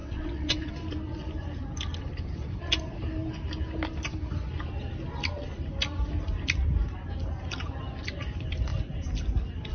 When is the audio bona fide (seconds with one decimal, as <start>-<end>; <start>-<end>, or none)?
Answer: 0.7-9.7